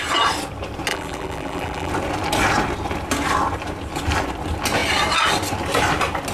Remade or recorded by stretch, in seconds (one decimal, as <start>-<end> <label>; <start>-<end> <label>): 0.0-0.9 recorded; 0.9-1.9 remade; 1.9-6.3 recorded